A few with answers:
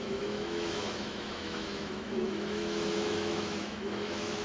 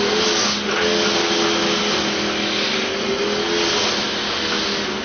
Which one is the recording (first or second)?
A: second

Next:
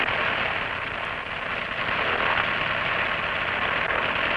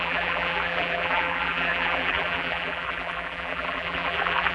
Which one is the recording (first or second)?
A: first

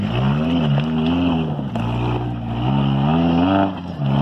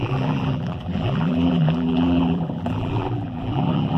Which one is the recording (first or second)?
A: first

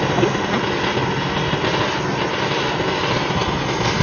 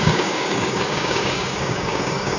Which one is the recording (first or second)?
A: first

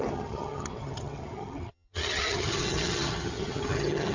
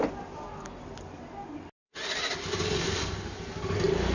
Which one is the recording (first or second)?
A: second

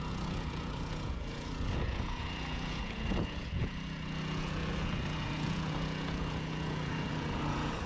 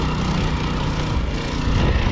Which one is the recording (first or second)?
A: second